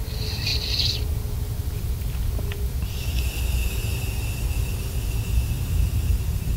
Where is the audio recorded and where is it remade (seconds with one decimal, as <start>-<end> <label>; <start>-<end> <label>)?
0.0-0.5 recorded; 0.5-3.4 remade; 3.4-6.6 recorded